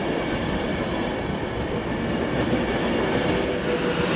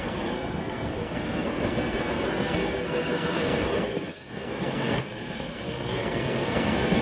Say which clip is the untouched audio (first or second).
first